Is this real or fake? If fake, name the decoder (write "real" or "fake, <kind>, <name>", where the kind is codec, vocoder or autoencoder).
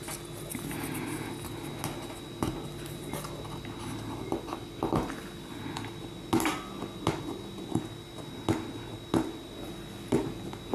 real